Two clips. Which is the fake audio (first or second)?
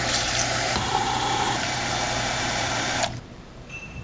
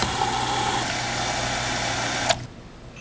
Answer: first